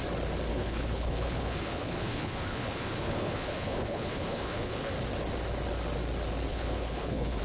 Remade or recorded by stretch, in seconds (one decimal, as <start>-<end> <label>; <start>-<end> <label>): 0.0-0.5 recorded; 0.5-4.9 remade; 4.9-6.5 recorded; 6.5-7.4 remade